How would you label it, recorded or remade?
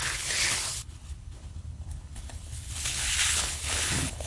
remade